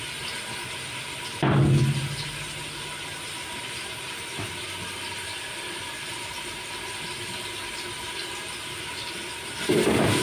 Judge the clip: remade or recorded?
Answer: recorded